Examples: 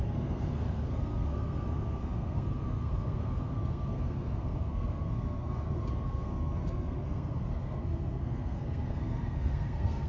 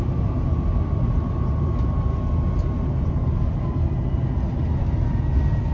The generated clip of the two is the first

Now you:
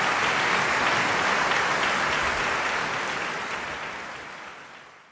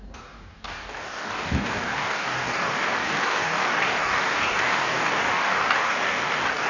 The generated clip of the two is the second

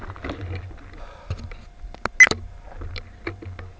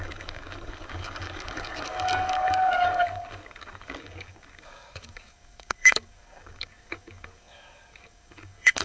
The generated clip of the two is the second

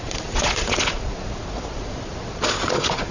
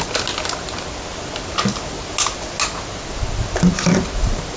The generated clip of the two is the first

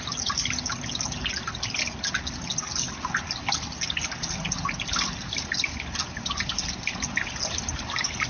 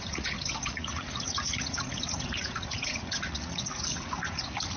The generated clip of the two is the second